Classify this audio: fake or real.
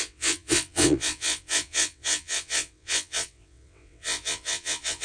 fake